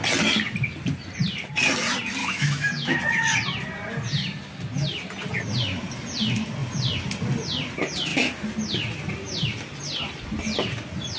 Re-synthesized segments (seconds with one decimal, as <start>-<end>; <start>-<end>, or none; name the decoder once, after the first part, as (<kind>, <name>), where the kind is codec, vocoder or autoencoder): 2.2-3.0 (autoencoder, DAC-VAE)